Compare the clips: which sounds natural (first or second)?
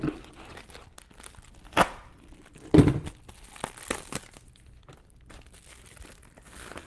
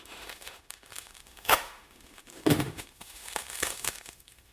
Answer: first